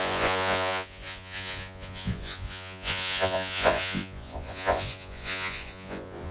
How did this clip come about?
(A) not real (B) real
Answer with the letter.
A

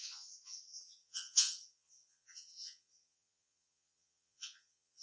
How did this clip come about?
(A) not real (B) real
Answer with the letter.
A